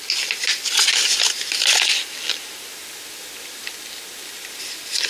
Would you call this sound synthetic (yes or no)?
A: no